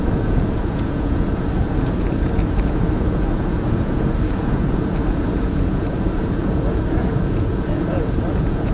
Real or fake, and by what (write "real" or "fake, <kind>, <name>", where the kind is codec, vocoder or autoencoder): fake, vocoder, Vocos